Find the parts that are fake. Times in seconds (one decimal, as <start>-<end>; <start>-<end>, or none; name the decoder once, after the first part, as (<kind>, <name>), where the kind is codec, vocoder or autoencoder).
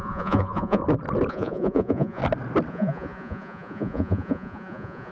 0.0-0.8 (vocoder, Vocos); 1.3-2.2; 2.7-5.1